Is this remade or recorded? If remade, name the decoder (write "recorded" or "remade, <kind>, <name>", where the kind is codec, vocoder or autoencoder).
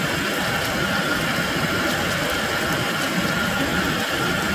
recorded